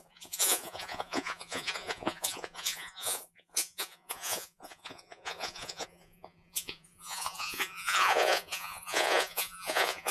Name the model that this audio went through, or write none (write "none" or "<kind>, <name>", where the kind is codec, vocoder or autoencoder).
vocoder, Vocos